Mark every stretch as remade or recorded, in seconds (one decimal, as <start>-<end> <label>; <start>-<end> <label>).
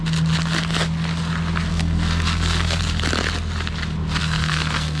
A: 0.0-1.7 recorded; 1.7-2.8 remade; 2.8-4.2 recorded; 4.2-5.0 remade